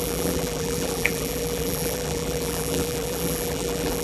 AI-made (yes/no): yes